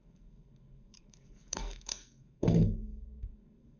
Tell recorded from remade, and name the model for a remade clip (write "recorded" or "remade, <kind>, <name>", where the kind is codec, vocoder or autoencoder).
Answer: remade, codec, SNAC